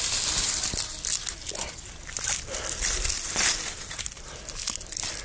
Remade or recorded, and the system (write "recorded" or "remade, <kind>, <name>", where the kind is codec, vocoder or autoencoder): recorded